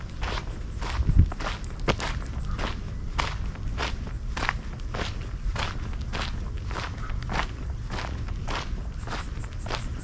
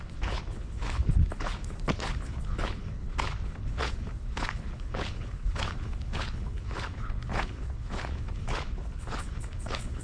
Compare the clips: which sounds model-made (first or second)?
second